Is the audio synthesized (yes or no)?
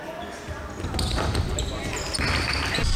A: no